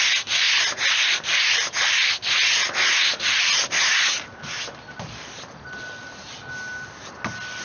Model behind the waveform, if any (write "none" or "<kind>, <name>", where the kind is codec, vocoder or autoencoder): none